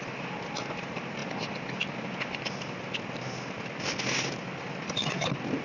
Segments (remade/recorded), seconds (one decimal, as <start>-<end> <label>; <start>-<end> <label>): 0.0-5.6 recorded